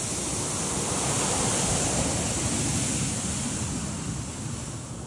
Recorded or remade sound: recorded